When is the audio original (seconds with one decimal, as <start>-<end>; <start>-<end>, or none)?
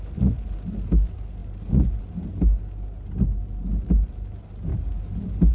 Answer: 0.0-4.7